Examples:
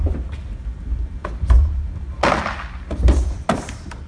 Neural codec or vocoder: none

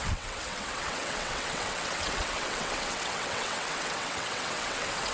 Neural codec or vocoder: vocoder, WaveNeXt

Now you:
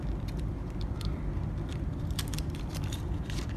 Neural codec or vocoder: vocoder, BigVGAN v2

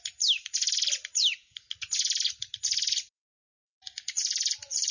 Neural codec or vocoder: vocoder, BigVGAN v2